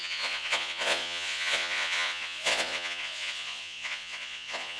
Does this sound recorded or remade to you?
remade